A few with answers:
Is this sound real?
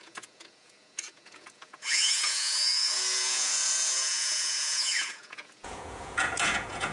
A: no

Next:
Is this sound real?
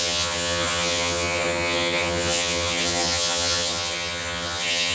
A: no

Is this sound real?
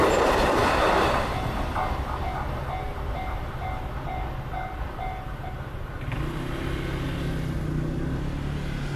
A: yes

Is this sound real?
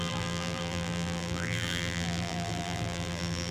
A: no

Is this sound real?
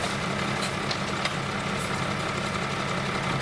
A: yes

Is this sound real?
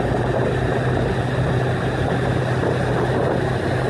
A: yes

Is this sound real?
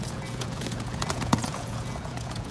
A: no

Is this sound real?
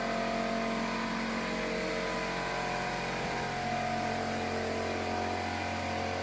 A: yes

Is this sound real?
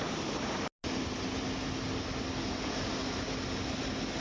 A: yes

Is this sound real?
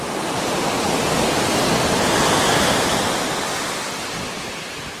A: yes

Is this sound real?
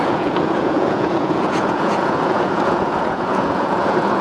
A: no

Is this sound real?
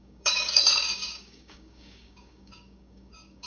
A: no